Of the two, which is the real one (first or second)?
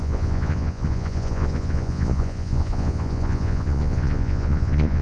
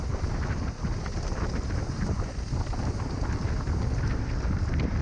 second